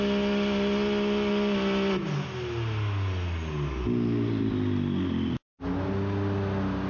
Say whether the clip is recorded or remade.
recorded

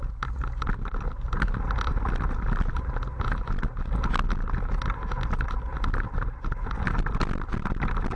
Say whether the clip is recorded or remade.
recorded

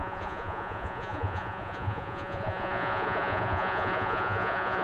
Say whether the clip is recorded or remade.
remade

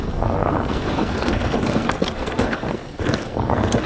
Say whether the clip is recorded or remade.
remade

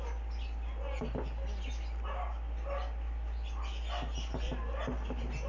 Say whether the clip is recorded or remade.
recorded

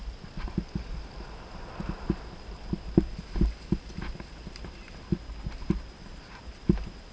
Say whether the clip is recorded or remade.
recorded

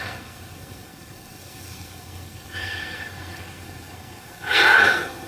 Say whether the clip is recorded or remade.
remade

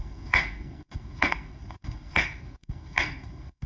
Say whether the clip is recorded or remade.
remade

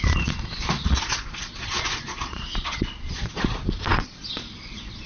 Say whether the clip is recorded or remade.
remade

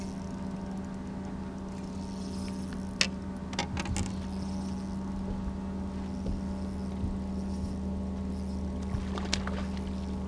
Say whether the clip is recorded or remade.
recorded